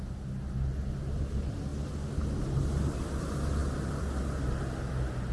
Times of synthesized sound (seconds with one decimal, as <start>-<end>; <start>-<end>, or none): none